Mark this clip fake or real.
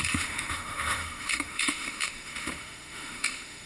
fake